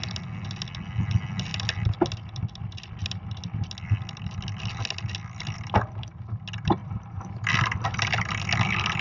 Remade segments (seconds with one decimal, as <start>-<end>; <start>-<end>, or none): 6.8-7.3